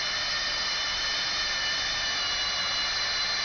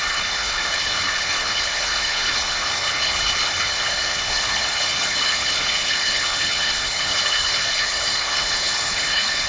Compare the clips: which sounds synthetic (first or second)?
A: second